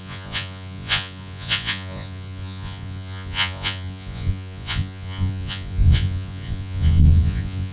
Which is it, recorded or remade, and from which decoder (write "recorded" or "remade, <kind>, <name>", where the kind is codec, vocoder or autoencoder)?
remade, vocoder, Vocos